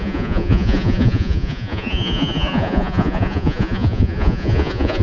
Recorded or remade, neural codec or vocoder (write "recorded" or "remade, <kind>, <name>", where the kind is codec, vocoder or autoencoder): remade, vocoder, Vocos